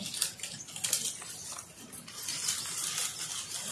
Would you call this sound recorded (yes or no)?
yes